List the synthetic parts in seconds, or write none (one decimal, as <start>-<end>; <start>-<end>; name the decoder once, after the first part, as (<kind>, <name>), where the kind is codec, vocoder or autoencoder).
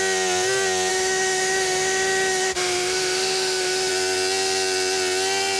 0.9-3.9 (autoencoder, DAC-VAE)